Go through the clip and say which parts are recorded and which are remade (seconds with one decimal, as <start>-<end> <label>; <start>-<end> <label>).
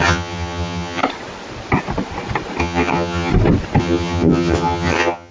0.0-1.0 remade; 1.0-2.6 recorded; 2.6-3.3 remade; 3.3-3.8 recorded; 3.8-5.3 remade